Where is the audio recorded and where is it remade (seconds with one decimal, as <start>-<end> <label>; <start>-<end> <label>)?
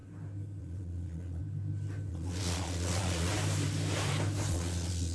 0.0-0.6 recorded; 0.6-1.4 remade; 1.4-2.1 recorded; 2.1-3.3 remade; 3.3-4.5 recorded; 4.5-5.1 remade